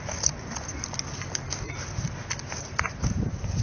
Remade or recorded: recorded